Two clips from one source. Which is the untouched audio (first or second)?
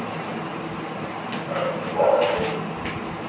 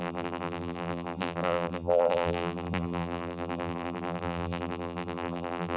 first